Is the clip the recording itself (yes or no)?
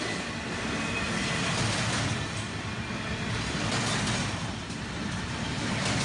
yes